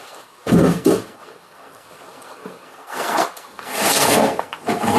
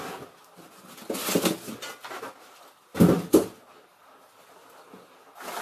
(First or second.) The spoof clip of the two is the first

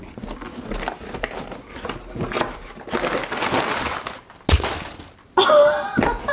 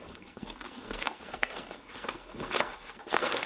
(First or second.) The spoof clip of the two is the second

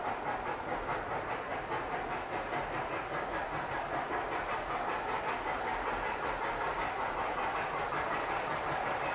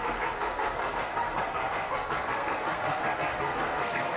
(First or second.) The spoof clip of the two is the second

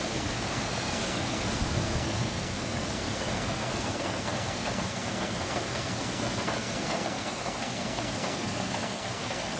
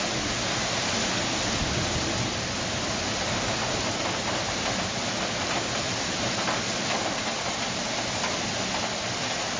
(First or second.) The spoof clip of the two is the first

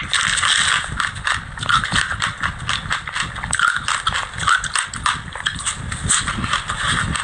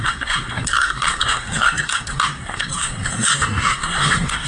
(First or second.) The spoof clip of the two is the second